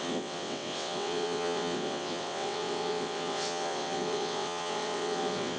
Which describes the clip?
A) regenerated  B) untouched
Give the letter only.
A